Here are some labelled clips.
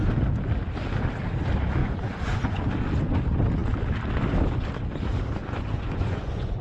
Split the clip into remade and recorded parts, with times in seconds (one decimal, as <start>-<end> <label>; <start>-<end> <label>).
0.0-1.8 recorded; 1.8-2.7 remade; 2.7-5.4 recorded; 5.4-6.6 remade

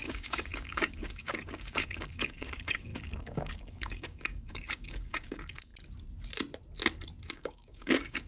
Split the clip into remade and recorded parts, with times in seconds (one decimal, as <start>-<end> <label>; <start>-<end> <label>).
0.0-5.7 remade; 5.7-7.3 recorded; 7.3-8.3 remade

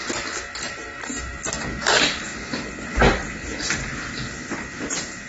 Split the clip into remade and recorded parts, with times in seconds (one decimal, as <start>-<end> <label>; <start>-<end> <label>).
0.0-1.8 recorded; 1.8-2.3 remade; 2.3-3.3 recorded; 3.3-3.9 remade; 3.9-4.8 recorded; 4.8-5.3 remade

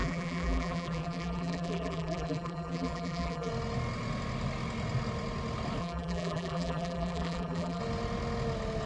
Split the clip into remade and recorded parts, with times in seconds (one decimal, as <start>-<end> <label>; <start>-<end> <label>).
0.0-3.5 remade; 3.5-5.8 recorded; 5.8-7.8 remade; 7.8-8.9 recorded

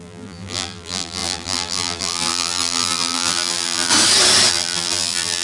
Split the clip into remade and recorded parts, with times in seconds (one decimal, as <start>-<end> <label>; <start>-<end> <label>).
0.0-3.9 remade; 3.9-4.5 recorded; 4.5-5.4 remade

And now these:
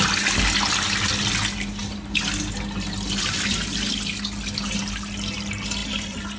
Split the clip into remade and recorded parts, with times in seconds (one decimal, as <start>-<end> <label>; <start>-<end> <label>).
0.0-6.4 recorded